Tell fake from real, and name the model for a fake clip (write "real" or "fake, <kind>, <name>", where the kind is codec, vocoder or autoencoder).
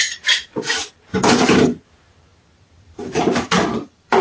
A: fake, vocoder, BigVGAN v2